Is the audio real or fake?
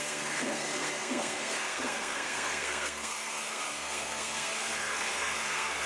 fake